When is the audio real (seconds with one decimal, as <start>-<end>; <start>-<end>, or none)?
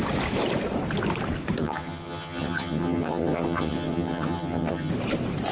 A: 0.0-1.6; 4.9-5.5